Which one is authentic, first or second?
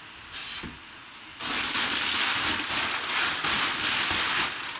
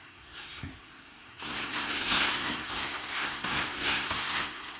first